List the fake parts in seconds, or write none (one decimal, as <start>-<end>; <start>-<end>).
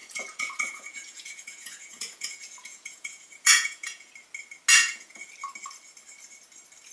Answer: 0.0-4.1; 4.7-5.3